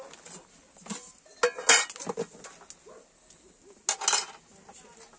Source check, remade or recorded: recorded